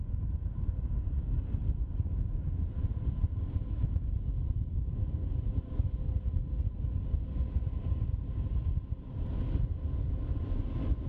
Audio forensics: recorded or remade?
recorded